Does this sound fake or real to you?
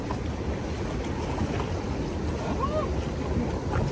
real